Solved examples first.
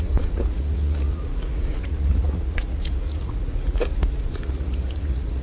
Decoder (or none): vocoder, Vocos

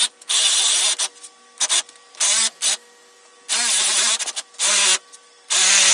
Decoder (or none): none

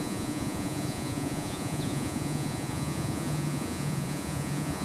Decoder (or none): vocoder, Vocos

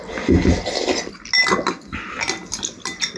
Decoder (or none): none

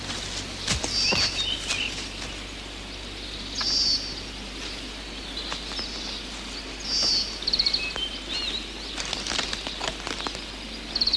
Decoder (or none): none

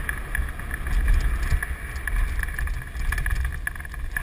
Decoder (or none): none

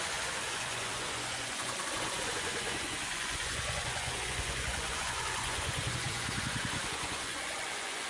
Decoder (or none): vocoder, Vocos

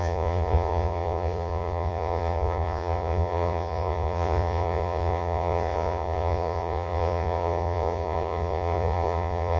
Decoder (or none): vocoder, Vocos